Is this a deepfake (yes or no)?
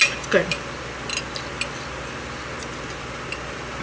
no